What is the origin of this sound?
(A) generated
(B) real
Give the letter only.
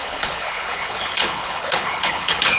A